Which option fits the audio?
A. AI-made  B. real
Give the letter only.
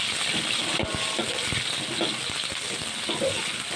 B